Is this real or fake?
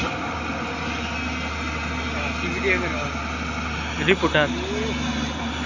real